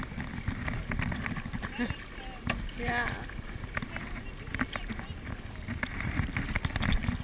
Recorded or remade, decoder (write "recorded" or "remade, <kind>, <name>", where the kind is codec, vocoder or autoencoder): recorded